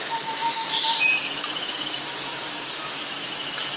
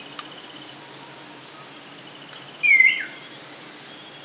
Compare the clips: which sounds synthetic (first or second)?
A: first